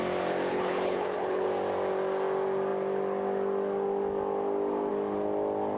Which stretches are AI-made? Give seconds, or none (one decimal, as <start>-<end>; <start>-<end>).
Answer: 0.5-1.5